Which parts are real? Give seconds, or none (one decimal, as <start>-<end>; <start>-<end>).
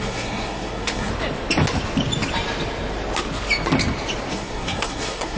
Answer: 1.1-4.3